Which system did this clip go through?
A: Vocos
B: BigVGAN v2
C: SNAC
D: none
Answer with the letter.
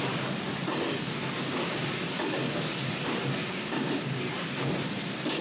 D